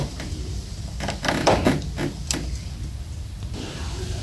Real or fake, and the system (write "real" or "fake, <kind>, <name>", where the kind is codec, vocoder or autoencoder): real